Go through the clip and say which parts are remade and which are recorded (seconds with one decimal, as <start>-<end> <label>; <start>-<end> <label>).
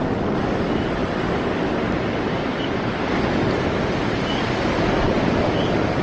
0.0-6.0 recorded